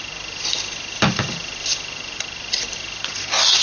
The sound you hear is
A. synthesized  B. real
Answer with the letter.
B